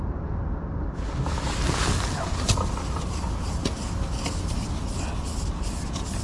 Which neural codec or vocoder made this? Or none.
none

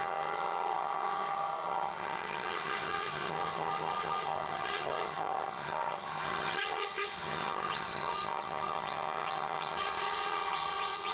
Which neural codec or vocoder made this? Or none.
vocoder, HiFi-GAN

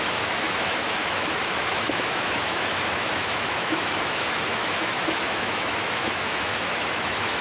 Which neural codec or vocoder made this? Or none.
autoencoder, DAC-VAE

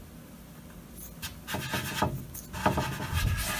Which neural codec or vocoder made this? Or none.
none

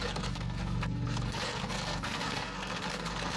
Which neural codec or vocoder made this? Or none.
codec, SNAC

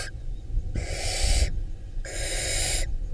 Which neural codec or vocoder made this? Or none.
vocoder, Vocos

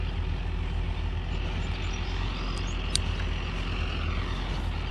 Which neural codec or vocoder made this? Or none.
none